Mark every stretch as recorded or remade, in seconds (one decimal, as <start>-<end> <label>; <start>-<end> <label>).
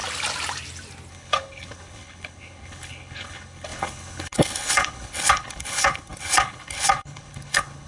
0.0-1.1 recorded; 1.1-7.9 remade